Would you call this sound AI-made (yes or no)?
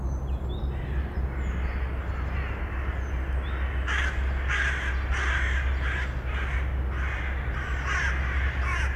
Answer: no